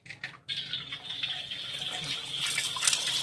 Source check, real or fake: real